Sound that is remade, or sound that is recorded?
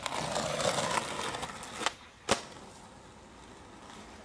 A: recorded